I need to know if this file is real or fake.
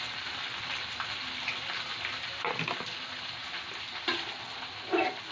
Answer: real